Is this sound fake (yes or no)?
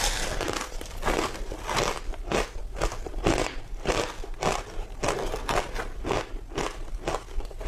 no